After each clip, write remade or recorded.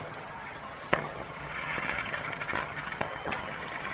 remade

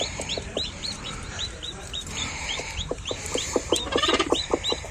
remade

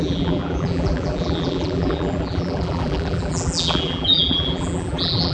remade